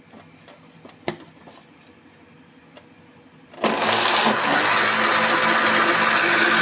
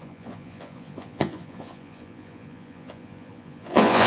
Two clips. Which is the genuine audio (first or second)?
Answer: first